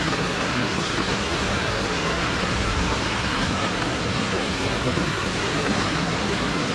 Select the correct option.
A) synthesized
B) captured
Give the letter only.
A